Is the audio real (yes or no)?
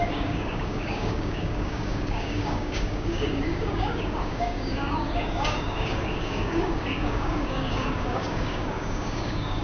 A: no